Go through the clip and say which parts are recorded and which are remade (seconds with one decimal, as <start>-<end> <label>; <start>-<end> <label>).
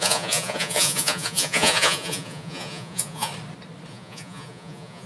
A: 0.0-3.3 remade; 3.3-3.9 recorded; 3.9-5.1 remade